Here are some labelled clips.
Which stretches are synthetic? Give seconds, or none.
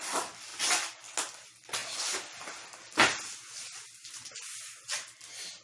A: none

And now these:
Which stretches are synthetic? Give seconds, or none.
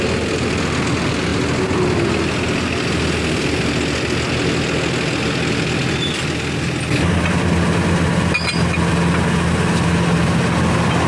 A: none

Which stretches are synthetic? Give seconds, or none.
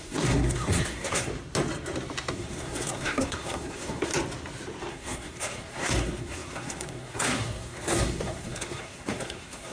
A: 0.0-1.3; 2.3-4.1; 4.9-9.7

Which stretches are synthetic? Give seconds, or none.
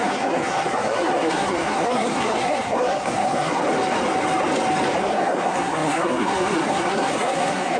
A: 0.0-3.6; 5.0-7.8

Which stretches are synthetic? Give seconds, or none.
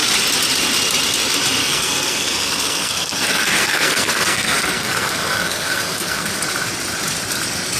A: 1.6-6.3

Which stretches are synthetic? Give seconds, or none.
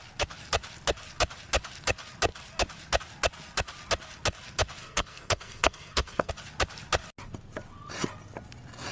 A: 4.8-6.3